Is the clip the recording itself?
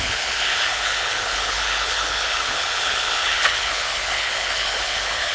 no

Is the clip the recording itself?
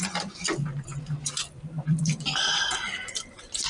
no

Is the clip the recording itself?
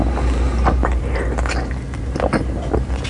yes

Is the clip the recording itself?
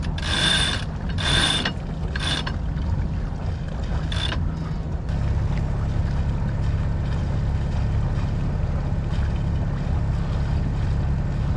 yes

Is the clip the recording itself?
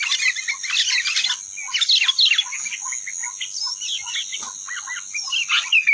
yes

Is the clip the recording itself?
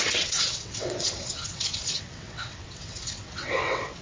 no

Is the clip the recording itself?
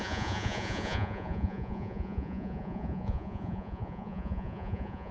no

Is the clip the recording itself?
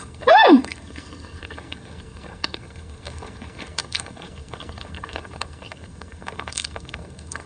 no